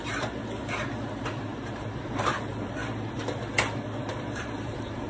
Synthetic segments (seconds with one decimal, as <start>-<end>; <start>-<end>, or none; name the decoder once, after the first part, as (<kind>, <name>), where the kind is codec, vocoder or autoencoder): 0.0-0.6 (vocoder, BigVGAN v2); 1.1-3.2; 4.1-5.1